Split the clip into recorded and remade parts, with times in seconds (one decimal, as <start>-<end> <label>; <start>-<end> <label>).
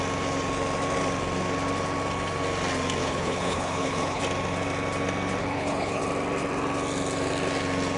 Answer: 0.0-3.0 recorded; 3.0-4.2 remade; 4.2-5.4 recorded; 5.4-6.0 remade; 6.0-8.0 recorded